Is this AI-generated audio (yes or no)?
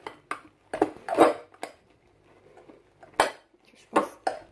no